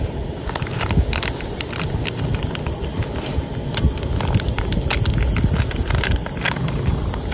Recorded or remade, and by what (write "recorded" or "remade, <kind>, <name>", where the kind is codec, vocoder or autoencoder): recorded